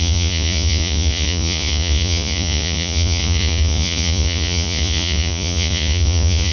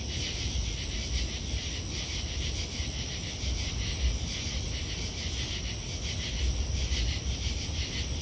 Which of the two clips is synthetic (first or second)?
first